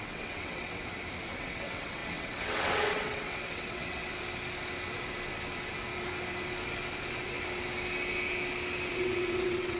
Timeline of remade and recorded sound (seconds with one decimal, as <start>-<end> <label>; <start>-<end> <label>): 0.0-0.9 remade; 0.9-1.4 recorded; 1.4-4.1 remade; 4.1-8.9 recorded; 8.9-9.8 remade